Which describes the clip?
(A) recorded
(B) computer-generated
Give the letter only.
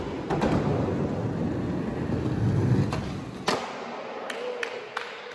A